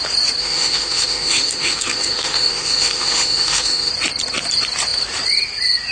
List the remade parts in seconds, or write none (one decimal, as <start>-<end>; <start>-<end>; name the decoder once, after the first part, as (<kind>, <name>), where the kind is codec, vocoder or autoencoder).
0.4-3.9 (autoencoder, DAC-VAE)